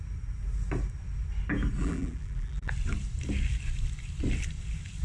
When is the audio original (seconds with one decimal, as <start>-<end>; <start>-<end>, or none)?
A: 0.0-1.8; 2.7-5.0